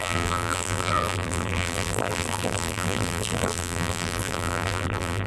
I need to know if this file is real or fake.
fake